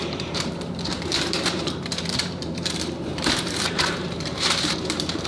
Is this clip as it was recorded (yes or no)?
no